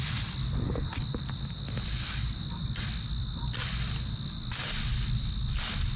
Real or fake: real